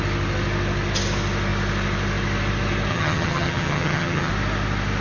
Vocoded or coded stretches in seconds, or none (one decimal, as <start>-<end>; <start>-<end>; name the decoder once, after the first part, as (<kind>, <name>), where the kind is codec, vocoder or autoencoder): 2.9-4.3 (vocoder, HiFi-GAN)